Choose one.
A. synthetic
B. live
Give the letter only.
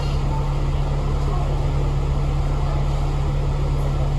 B